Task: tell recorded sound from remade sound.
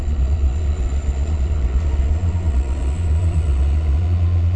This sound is remade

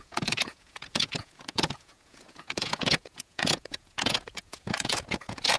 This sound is remade